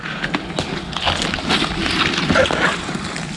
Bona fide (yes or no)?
yes